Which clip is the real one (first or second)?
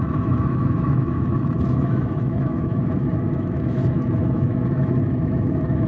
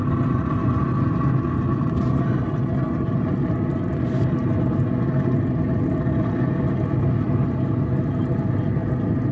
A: second